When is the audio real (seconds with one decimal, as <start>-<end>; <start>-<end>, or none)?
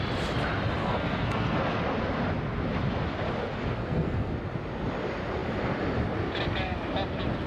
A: 0.0-0.8; 1.6-3.8; 4.3-7.5